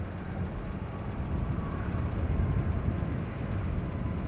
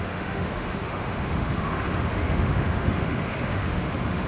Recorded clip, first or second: first